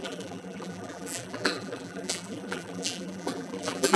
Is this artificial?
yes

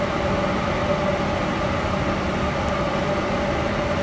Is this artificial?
no